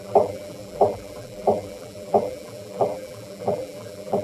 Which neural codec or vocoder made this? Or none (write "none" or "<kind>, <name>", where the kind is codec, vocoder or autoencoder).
vocoder, BigVGAN v2